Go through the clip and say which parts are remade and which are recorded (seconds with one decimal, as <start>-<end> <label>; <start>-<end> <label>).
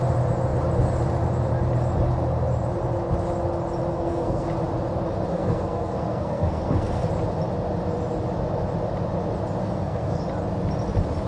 0.0-3.9 recorded; 3.9-4.5 remade; 4.5-5.3 recorded; 5.3-7.1 remade; 7.1-9.6 recorded; 9.6-10.2 remade; 10.2-11.3 recorded